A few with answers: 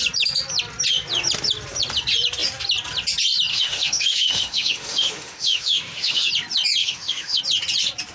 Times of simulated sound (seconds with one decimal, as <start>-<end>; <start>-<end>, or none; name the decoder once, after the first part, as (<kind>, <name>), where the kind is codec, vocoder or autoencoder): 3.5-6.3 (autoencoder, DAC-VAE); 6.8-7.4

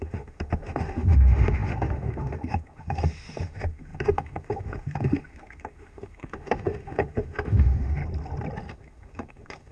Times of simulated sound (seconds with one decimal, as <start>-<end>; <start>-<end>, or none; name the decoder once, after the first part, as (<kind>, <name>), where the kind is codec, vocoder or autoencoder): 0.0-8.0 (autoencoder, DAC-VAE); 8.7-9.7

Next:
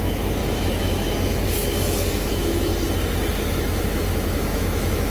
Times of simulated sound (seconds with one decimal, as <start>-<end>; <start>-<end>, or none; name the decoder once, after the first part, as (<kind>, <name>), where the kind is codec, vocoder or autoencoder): 0.0-2.7 (autoencoder, DAC-VAE); 3.3-5.1

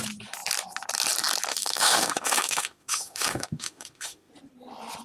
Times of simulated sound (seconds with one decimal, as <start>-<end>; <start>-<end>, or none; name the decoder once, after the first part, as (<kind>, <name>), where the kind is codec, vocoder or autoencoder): 1.5-4.3 (autoencoder, DAC-VAE)

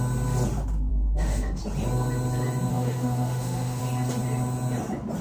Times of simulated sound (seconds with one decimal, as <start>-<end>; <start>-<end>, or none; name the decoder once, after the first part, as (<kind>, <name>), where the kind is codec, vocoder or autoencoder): 0.9-1.6 (autoencoder, DAC-VAE); 2.7-3.8

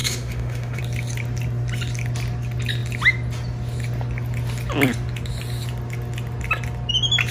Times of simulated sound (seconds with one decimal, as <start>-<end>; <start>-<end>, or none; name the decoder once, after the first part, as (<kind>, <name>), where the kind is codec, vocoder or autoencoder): 0.0-0.8 (autoencoder, DAC-VAE)